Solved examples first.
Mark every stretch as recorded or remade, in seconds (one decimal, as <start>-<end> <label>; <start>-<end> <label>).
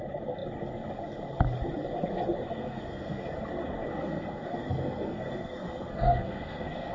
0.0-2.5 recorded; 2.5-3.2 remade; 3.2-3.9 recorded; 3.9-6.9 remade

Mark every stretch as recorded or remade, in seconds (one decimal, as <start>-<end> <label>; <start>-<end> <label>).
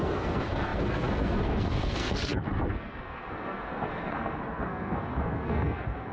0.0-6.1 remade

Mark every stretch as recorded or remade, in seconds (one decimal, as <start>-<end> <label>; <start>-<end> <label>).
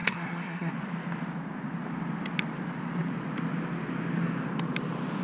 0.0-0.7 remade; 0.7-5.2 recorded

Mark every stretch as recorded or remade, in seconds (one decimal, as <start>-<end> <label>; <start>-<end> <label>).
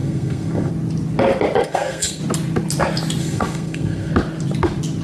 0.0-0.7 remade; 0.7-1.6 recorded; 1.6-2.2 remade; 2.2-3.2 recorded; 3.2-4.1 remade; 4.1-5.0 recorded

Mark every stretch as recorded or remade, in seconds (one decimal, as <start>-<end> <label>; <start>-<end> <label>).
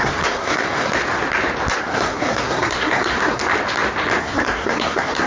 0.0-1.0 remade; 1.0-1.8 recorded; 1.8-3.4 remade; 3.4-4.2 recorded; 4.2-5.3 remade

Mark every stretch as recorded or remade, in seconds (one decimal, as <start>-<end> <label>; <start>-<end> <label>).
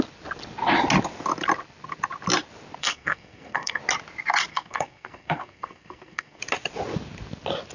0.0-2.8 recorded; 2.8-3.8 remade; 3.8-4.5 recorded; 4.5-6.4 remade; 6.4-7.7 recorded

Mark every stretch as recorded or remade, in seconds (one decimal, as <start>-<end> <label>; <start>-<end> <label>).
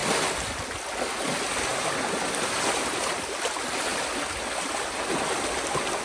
0.0-6.0 recorded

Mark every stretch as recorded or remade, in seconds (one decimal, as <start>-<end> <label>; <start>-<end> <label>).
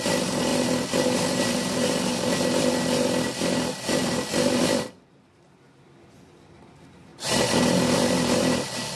0.0-9.0 recorded